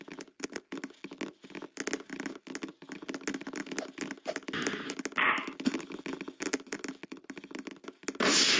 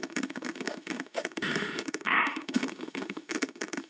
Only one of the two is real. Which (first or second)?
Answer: first